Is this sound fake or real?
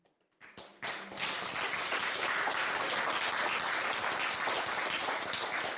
real